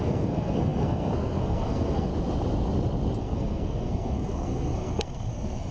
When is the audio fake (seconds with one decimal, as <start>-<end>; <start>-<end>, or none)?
0.0-2.1; 3.2-5.7